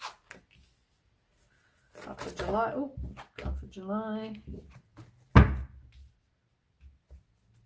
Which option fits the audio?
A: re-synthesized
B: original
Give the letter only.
B